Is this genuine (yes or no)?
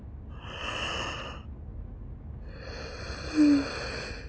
yes